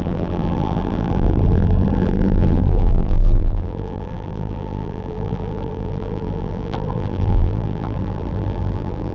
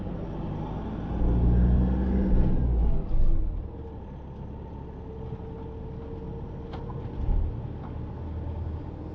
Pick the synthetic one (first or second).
first